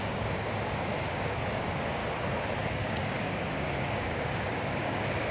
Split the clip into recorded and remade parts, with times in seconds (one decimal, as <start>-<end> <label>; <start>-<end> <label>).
0.0-2.0 remade; 2.0-2.7 recorded; 2.7-5.3 remade